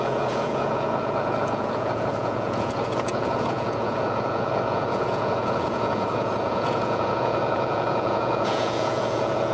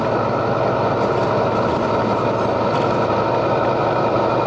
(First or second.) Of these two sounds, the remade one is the first